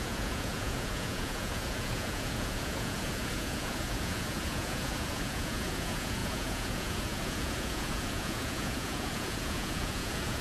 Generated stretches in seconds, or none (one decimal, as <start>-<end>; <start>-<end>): 0.0-10.4